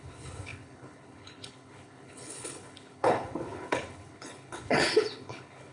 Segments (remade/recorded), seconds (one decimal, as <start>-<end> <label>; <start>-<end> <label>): 0.0-5.7 remade